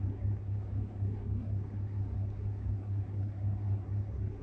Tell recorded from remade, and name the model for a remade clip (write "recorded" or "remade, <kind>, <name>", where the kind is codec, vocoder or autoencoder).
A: remade, codec, SNAC